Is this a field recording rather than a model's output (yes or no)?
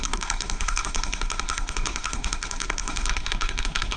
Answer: no